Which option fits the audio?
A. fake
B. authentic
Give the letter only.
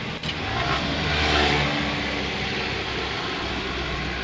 B